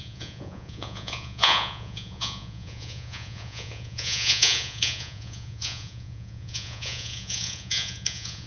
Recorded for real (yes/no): no